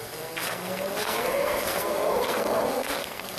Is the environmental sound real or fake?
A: fake